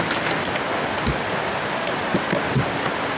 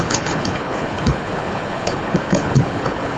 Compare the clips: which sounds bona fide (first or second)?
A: first